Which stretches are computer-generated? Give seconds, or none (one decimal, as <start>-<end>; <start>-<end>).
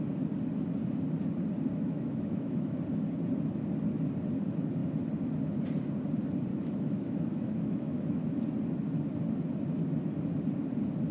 1.7-2.8; 6.5-8.4